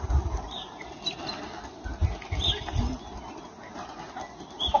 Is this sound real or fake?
real